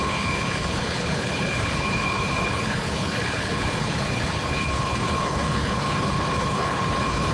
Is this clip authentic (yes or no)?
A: no